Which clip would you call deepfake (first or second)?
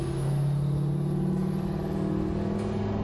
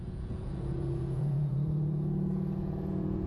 second